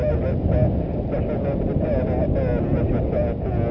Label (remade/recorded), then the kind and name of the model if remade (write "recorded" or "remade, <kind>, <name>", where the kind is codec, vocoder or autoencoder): recorded